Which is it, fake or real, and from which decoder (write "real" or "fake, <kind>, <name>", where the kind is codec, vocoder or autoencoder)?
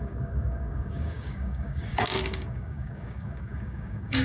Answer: fake, codec, DAC